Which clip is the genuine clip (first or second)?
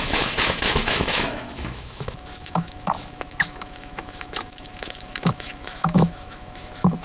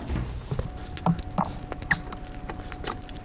second